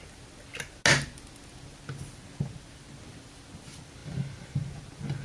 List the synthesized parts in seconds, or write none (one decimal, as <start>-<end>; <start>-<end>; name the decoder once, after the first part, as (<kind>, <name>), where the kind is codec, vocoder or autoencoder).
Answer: none